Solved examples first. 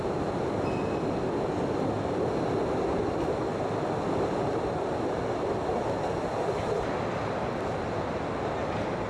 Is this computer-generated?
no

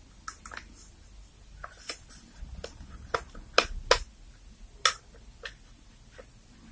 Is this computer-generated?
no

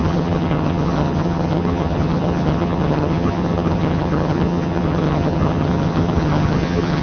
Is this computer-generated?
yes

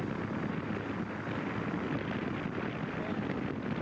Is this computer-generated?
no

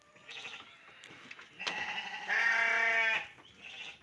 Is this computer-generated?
no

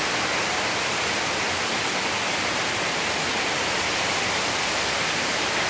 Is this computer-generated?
no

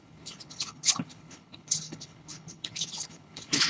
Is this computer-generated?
yes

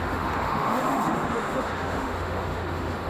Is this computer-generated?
yes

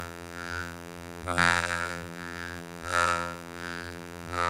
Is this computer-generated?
yes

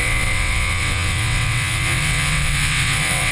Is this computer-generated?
yes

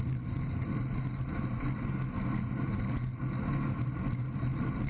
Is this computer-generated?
no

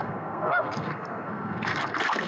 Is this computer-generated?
yes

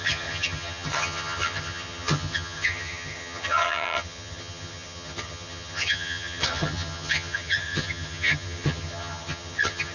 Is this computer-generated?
yes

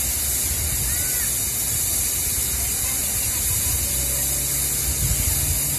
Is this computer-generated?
no